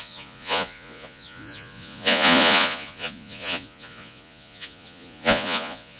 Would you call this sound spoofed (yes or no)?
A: yes